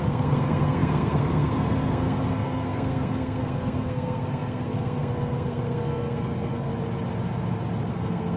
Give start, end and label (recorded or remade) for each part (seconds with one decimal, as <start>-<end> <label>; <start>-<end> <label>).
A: 0.0-6.7 remade; 6.7-7.9 recorded; 7.9-8.4 remade